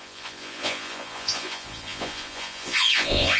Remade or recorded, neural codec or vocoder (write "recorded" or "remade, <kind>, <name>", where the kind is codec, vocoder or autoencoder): remade, vocoder, Vocos